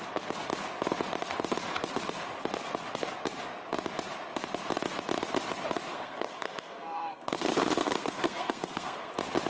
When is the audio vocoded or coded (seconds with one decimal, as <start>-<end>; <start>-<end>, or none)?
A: 5.9-9.1